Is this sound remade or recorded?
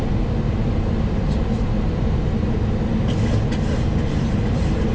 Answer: recorded